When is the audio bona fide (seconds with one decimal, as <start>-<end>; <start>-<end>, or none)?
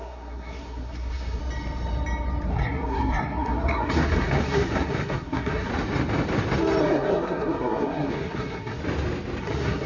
1.4-2.5; 5.7-6.8; 8.8-9.4